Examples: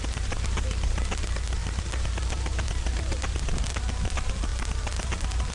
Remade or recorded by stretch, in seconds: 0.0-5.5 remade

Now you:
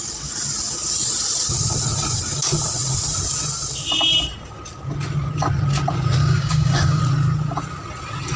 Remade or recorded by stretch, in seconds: 0.0-6.2 recorded; 6.2-7.0 remade; 7.0-8.4 recorded

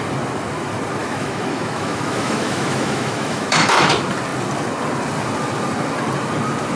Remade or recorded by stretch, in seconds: 0.0-1.0 recorded; 1.0-3.9 remade; 3.9-6.8 recorded

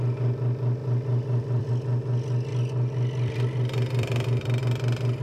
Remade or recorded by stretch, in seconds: 0.0-0.8 recorded; 0.8-1.7 remade; 1.7-2.5 recorded; 2.5-4.6 remade; 4.6-5.2 recorded